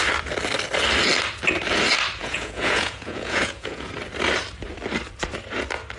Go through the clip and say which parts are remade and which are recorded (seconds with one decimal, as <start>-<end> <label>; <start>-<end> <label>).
0.0-2.2 recorded; 2.2-3.9 remade; 3.9-6.0 recorded